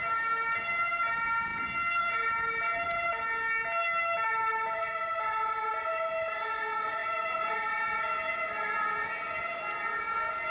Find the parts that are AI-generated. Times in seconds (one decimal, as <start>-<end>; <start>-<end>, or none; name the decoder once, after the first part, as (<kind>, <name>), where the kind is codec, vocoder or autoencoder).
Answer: none